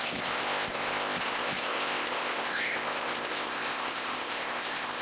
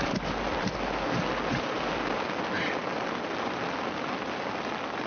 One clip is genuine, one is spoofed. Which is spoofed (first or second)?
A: first